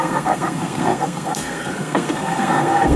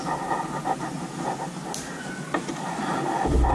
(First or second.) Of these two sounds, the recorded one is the second